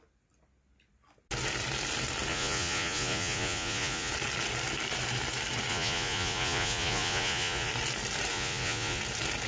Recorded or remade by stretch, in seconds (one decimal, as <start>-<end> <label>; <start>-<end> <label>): 0.0-2.3 recorded; 2.3-4.1 remade; 4.1-5.7 recorded; 5.7-7.7 remade; 7.7-8.3 recorded; 8.3-9.0 remade; 9.0-9.5 recorded